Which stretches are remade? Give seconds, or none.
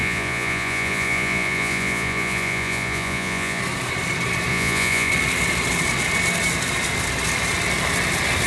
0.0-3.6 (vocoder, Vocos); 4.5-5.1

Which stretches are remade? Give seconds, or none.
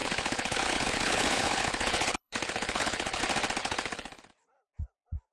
0.0-3.2 (codec, HILCodec); 3.6-4.2